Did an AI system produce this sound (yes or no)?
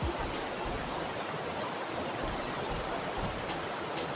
no